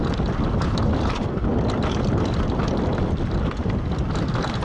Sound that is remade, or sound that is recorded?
recorded